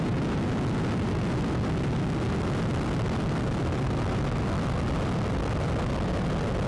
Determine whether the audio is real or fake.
fake